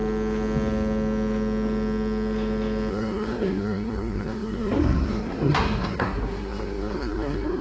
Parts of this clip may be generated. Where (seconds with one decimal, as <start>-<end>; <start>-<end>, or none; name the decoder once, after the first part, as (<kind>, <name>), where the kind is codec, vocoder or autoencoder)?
2.9-7.6 (codec, SNAC)